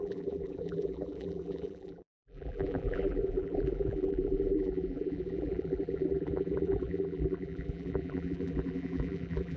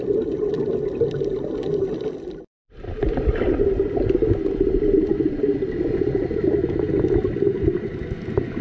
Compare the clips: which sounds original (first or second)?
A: second